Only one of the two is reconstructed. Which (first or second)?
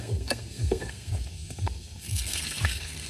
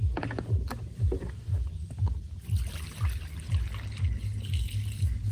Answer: first